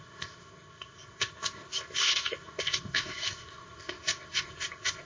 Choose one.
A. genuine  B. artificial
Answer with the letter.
B